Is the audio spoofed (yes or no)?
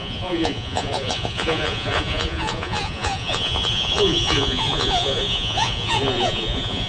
yes